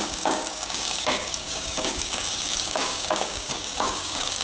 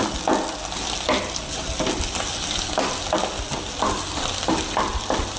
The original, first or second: second